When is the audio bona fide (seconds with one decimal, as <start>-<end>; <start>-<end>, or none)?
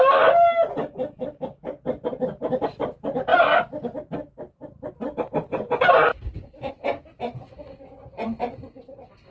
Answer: 0.0-6.1; 6.7-9.3